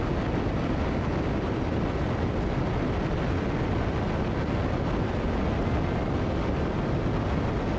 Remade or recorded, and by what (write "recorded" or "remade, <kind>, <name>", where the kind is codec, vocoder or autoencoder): recorded